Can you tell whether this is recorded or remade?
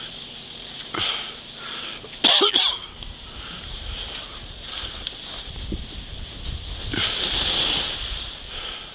recorded